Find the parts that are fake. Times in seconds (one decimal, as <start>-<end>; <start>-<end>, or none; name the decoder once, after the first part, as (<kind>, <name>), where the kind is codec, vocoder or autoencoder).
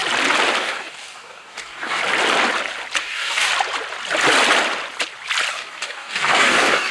0.6-2.0 (codec, DAC); 3.0-3.5; 5.5-6.9